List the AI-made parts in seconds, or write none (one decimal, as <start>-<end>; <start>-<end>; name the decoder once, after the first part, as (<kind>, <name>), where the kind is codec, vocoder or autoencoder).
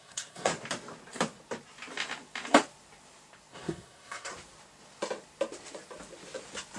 0.0-0.5 (codec, SNAC); 3.5-4.3